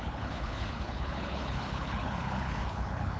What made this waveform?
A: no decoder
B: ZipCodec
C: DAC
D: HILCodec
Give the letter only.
D